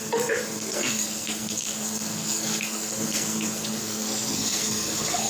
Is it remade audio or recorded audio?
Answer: remade